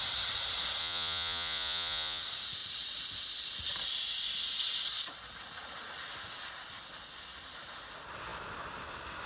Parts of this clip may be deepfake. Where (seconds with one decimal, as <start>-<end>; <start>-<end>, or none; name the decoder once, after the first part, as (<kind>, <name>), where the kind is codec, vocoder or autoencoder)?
0.8-2.2 (vocoder, Vocos)